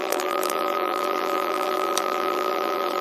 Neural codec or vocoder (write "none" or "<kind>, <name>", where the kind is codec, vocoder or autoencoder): vocoder, BigVGAN v2